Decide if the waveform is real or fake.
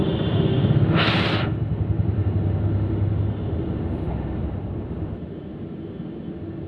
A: real